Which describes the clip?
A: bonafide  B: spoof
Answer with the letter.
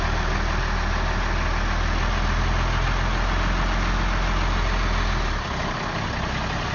A